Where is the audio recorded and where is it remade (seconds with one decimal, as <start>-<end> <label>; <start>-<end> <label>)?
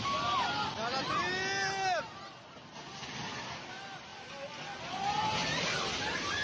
0.0-6.4 recorded